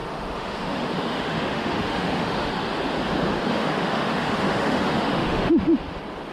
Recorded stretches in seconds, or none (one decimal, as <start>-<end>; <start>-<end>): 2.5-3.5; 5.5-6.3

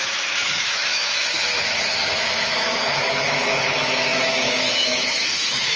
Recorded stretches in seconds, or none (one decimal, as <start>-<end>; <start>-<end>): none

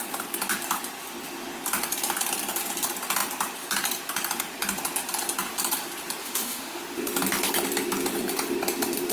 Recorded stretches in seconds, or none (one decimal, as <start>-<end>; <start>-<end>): 0.0-6.2; 6.8-9.1